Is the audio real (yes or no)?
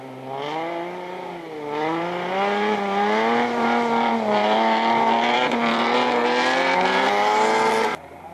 no